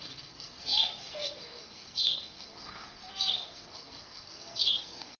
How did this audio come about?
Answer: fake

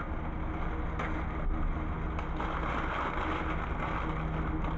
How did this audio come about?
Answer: real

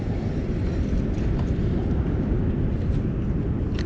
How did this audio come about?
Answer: real